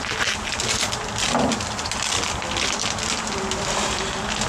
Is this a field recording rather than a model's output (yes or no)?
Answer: yes